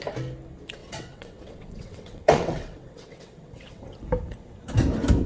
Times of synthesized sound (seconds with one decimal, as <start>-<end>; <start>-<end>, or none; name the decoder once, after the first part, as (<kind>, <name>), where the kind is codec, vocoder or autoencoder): 0.8-4.0 (vocoder, WaveNeXt)